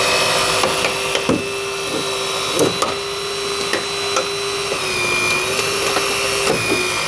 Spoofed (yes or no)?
no